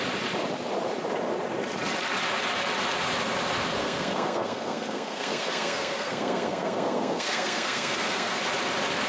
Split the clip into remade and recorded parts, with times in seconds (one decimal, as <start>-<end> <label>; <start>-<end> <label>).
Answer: 0.0-3.8 recorded; 3.8-8.4 remade; 8.4-9.1 recorded